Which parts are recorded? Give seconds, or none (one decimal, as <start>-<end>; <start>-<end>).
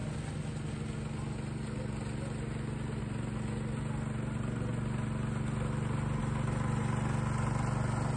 0.0-8.2